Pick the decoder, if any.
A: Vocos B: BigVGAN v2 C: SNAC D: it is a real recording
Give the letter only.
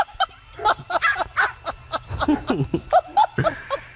D